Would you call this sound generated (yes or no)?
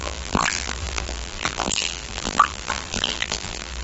yes